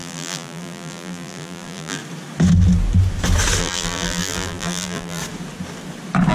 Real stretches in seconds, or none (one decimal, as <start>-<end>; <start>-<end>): 2.0-3.6; 5.2-6.3